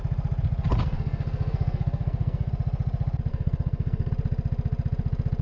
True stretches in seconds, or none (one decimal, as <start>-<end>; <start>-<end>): 0.0-0.8; 2.5-3.3; 4.1-5.4